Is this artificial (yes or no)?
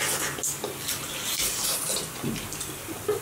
no